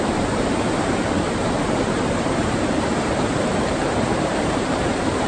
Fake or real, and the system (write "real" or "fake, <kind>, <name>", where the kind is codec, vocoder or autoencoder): fake, vocoder, BigVGAN v2